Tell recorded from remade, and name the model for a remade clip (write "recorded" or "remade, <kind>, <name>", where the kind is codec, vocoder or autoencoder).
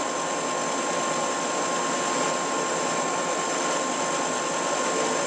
recorded